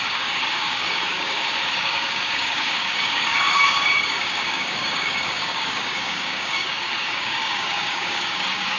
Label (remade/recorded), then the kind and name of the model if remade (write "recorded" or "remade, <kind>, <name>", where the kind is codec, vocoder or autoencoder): remade, codec, DAC